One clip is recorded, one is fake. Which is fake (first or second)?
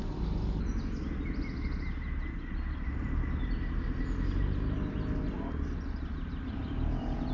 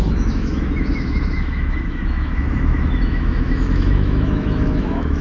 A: second